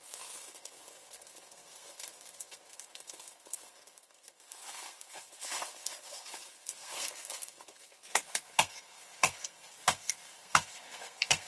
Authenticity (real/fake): fake